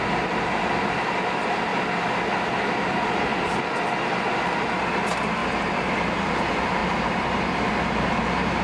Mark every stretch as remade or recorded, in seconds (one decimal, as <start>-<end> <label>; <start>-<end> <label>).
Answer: 0.0-1.7 remade; 1.7-2.9 recorded; 2.9-3.3 remade; 3.3-4.9 recorded; 4.9-8.6 remade